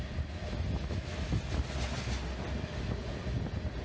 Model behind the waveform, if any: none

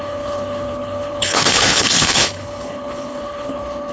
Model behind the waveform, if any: codec, HILCodec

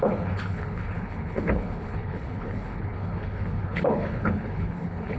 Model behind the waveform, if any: codec, HILCodec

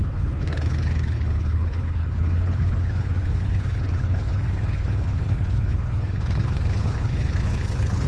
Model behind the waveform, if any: codec, HILCodec